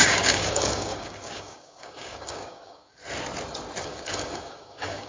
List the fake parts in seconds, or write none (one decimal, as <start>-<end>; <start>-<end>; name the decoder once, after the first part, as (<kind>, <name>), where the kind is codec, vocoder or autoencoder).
0.0-3.0 (codec, DAC); 3.8-5.1